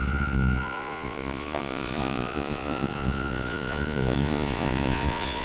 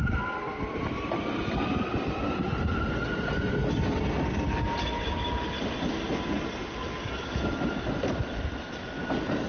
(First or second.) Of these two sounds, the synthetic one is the first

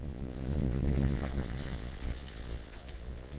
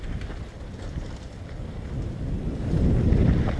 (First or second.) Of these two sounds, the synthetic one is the first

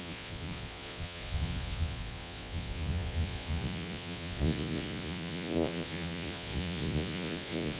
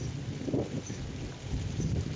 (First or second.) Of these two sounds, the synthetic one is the first